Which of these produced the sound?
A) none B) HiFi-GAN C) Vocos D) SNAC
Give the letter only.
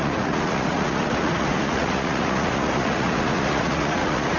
C